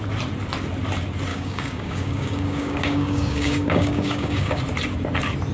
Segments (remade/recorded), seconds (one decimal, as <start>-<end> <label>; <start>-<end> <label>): 0.0-1.3 recorded; 1.3-4.6 remade; 4.6-5.5 recorded